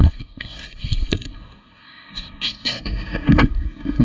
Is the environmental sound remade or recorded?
remade